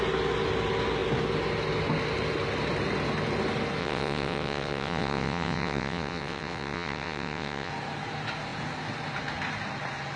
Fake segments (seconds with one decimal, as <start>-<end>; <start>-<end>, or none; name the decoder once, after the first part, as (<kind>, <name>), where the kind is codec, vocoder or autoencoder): 3.8-7.7 (vocoder, WaveNeXt)